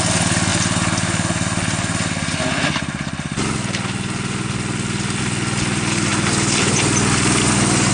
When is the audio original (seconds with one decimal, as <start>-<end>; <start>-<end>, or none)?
0.0-7.9